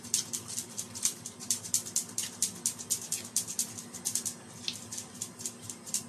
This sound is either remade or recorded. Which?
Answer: recorded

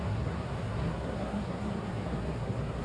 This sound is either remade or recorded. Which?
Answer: remade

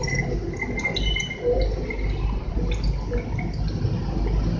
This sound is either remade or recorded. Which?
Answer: recorded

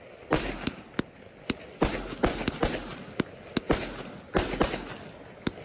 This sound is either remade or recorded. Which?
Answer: recorded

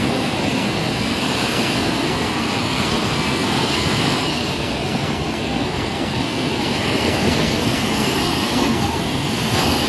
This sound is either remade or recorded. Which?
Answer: remade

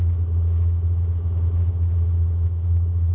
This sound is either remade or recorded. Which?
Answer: recorded